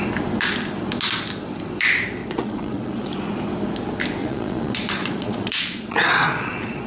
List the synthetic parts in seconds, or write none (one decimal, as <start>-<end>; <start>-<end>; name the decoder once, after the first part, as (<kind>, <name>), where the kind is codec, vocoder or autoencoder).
2.2-3.2 (vocoder, Vocos); 4.2-6.9